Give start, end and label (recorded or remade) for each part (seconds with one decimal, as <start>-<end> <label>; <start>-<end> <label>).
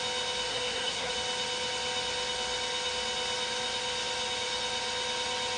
0.0-0.5 recorded; 0.5-1.1 remade; 1.1-5.6 recorded